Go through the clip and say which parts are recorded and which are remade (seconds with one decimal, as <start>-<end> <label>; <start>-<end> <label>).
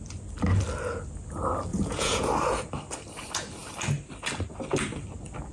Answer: 0.0-1.7 recorded; 1.7-2.3 remade; 2.3-5.5 recorded